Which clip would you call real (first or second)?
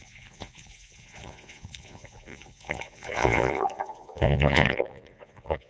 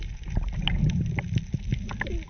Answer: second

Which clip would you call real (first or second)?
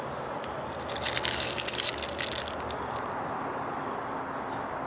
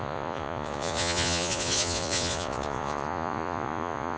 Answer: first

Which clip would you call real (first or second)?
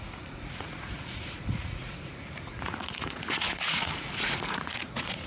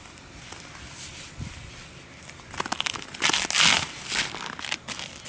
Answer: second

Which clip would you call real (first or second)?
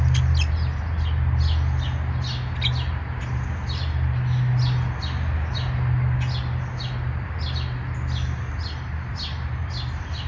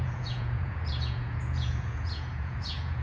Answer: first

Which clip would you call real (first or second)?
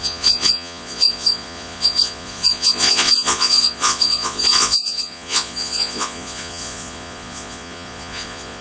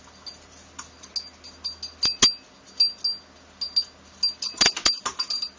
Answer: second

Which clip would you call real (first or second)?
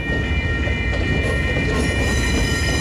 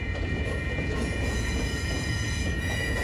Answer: first